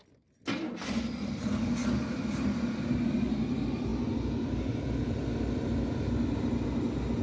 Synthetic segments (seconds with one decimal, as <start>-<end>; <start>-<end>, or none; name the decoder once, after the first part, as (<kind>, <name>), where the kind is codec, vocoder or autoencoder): none